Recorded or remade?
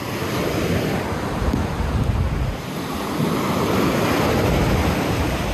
recorded